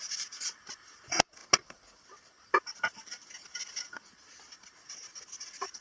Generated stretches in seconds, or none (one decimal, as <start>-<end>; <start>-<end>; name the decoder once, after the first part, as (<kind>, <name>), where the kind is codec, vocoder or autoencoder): none